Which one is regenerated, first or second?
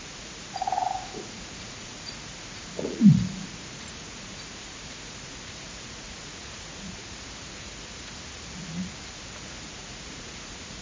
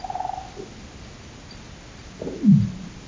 first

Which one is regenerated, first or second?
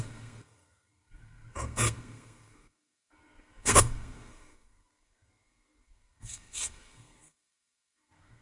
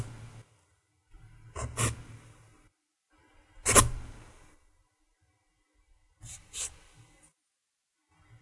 first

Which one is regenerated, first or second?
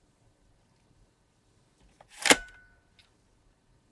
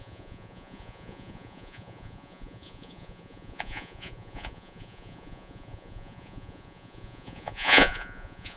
second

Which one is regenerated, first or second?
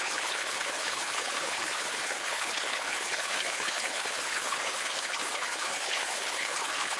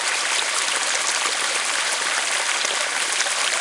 first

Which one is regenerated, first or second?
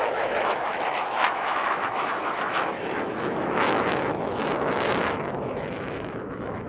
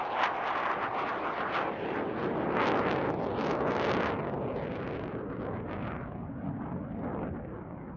first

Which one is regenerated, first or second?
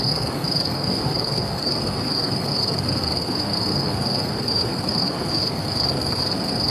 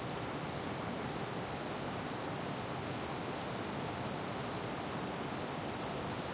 first